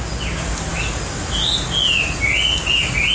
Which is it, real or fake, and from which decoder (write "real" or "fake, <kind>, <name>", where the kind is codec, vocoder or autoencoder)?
real